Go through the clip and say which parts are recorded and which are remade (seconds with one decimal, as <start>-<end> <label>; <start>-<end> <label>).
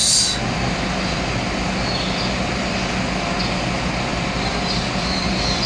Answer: 0.0-5.7 recorded